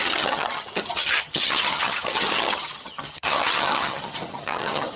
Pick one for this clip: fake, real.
fake